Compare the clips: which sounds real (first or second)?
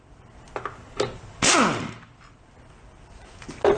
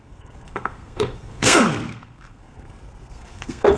first